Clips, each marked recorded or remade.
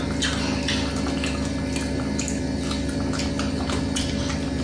recorded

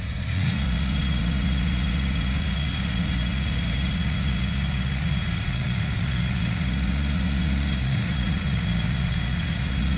remade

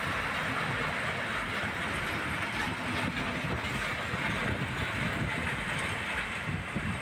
recorded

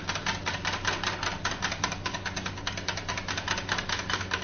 recorded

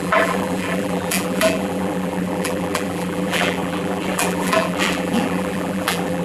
remade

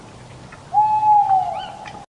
recorded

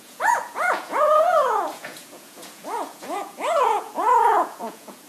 remade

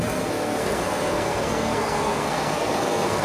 remade